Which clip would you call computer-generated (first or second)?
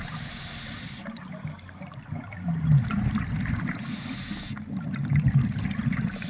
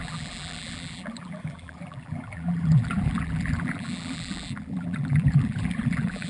second